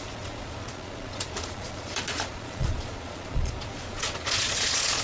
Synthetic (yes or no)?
yes